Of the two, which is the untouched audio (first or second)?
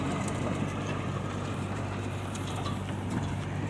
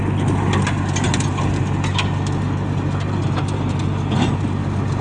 second